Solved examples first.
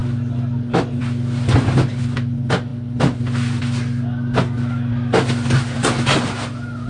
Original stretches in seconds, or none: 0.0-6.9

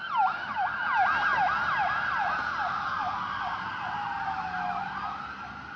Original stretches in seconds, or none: 0.0-5.8